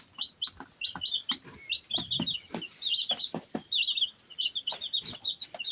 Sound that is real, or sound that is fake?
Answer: real